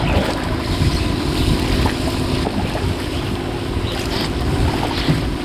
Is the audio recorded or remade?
recorded